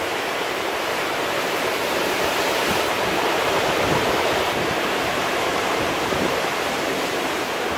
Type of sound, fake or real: fake